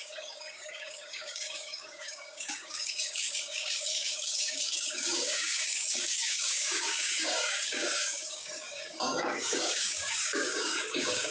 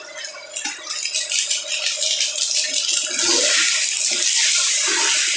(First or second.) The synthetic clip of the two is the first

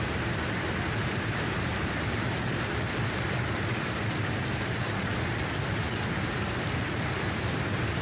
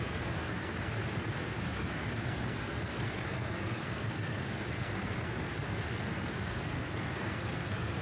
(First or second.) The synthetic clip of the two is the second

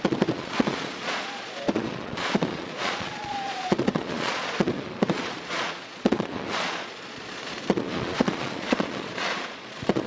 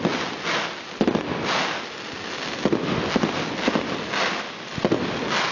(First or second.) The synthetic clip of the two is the first